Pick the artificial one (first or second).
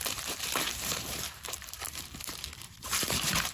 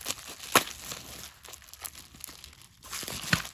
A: first